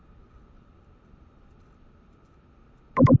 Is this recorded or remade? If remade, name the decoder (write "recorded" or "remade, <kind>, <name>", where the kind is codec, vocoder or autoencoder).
recorded